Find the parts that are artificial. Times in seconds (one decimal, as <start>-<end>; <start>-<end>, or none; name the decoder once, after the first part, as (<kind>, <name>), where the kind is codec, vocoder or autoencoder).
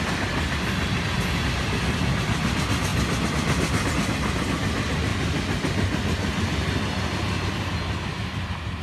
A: none